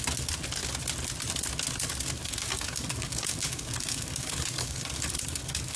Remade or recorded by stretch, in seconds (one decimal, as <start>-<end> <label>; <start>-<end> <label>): 0.0-2.2 recorded; 2.2-5.8 remade